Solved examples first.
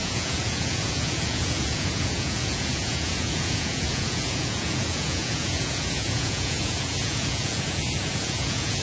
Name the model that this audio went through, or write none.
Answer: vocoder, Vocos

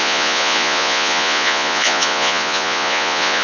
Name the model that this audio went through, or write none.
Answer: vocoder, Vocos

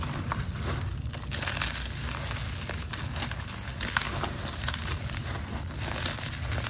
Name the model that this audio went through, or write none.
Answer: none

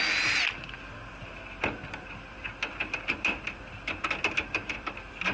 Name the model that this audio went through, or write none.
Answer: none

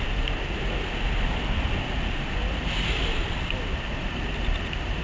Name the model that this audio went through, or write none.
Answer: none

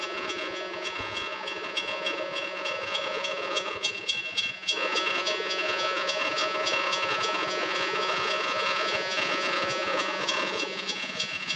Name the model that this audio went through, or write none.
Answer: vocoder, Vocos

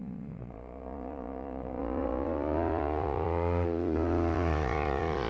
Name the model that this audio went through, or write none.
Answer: vocoder, Vocos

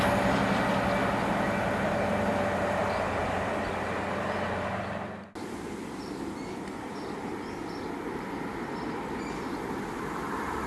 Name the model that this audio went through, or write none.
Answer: none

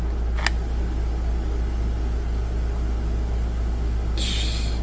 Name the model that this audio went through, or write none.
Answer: none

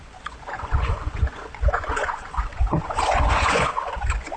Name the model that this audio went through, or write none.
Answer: vocoder, Vocos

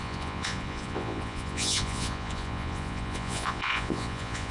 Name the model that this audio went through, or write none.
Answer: vocoder, Vocos